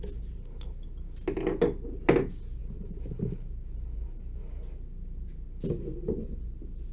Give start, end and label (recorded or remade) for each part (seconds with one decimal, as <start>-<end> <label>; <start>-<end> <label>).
0.0-6.9 recorded